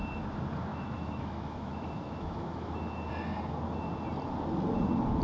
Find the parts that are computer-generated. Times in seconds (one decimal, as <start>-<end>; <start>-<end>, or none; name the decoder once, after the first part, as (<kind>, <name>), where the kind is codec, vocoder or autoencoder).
0.7-3.1 (autoencoder, DAC-VAE)